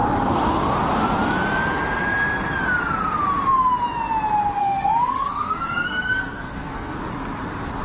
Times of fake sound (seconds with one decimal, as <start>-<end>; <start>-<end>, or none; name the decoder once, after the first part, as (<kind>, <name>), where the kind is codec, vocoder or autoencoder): 4.6-7.0 (codec, SNAC)